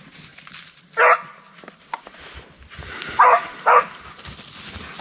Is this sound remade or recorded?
recorded